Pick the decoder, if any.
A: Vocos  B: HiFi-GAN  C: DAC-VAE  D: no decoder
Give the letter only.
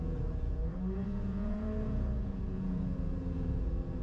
A